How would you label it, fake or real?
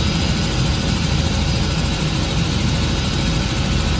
fake